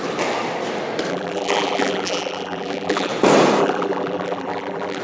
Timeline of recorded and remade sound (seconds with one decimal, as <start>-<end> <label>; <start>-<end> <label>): 0.0-1.1 recorded; 1.1-3.1 remade; 3.1-3.6 recorded; 3.6-5.0 remade